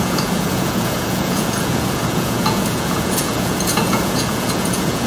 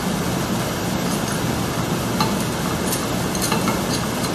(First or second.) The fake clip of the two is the first